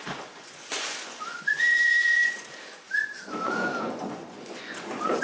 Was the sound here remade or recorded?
remade